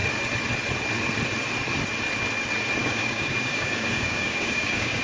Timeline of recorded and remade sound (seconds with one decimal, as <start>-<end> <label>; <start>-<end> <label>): 0.0-2.8 recorded; 2.8-5.0 remade